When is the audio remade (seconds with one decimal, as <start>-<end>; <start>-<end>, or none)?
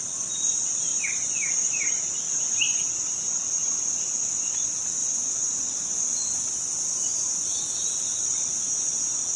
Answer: 5.0-6.5